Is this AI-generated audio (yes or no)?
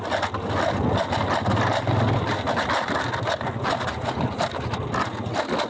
no